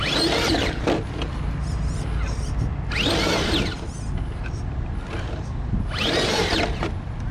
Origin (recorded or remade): recorded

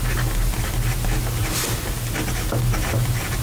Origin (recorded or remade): recorded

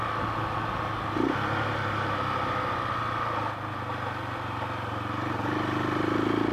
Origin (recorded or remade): recorded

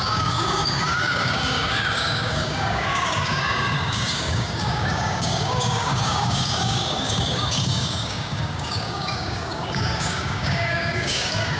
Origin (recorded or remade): remade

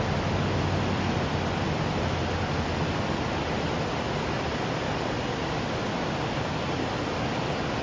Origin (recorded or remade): recorded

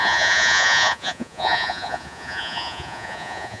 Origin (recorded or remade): remade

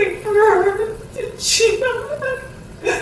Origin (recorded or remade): remade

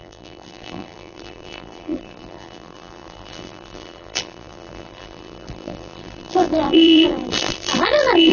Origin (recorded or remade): remade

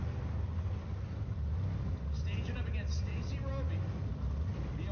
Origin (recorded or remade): recorded